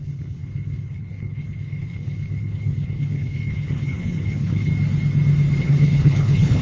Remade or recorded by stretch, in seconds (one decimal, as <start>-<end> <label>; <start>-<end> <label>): 0.0-4.7 remade; 4.7-5.6 recorded; 5.6-6.6 remade